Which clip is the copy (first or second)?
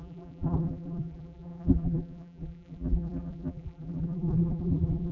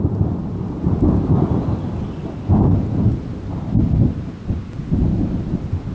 first